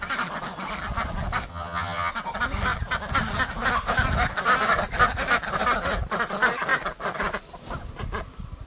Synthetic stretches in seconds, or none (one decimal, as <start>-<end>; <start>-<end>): 1.5-2.1